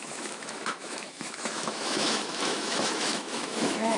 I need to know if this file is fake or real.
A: fake